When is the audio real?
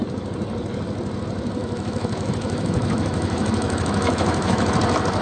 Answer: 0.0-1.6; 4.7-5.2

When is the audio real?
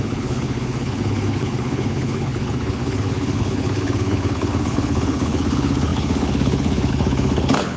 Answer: none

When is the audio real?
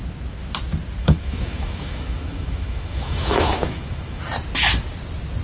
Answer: 0.0-1.0; 4.2-5.4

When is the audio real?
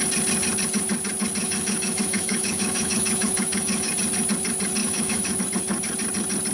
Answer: 0.0-1.4; 3.9-4.8; 5.4-6.5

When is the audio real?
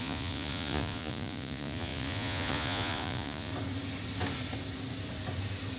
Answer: 3.5-5.8